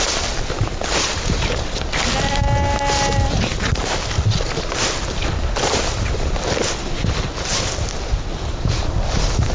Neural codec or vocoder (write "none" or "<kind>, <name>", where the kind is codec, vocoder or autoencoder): none